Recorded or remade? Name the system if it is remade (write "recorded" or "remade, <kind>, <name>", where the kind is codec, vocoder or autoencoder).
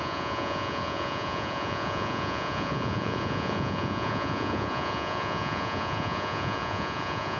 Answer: remade, vocoder, Vocos